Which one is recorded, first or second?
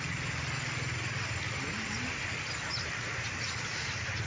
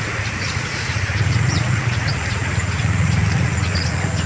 first